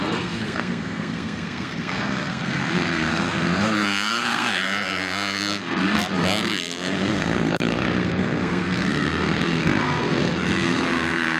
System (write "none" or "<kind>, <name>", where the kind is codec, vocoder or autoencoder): codec, SNAC